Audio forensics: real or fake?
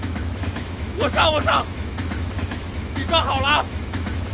fake